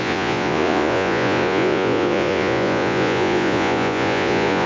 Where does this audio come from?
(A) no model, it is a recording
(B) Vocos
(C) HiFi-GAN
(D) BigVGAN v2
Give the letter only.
B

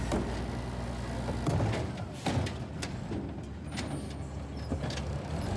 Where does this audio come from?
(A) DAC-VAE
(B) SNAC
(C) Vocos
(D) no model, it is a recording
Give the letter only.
D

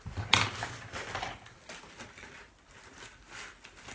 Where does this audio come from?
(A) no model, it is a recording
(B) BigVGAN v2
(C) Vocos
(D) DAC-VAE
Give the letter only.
A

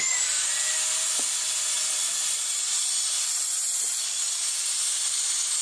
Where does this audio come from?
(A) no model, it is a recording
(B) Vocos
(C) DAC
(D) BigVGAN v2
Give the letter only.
A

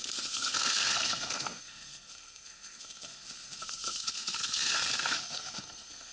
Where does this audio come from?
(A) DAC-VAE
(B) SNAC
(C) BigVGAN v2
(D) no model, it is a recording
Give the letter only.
B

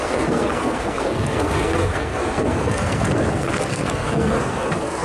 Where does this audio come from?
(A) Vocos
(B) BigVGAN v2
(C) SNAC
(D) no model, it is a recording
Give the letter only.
C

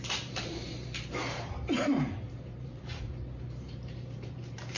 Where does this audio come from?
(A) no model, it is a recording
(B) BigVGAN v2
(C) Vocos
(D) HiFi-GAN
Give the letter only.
B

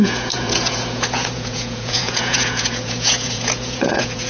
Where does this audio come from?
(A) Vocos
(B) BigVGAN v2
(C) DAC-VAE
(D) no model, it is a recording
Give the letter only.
A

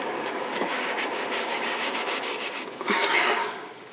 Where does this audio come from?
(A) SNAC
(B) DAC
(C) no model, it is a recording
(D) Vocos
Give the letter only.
B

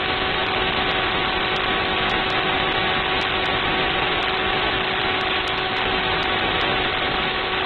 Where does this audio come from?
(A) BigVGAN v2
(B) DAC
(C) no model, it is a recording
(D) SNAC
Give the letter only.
C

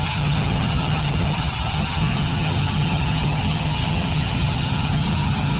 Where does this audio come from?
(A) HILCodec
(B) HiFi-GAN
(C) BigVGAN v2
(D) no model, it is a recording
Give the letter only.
B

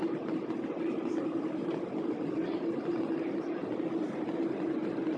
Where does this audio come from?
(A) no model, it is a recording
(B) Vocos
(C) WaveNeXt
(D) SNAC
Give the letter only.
A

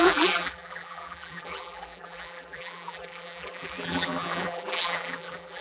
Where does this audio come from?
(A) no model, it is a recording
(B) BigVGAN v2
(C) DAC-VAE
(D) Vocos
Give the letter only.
B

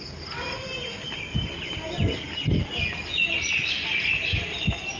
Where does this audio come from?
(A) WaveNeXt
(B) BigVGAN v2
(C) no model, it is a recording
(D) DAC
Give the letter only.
C